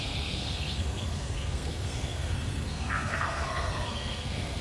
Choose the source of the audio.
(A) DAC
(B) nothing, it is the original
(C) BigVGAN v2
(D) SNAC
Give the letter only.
D